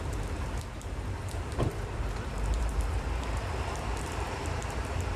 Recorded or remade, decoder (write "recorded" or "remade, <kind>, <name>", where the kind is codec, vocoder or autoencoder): remade, vocoder, BigVGAN v2